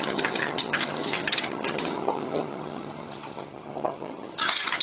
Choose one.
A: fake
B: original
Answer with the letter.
A